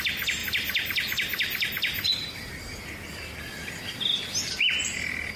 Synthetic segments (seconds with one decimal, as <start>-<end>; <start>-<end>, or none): 0.4-2.3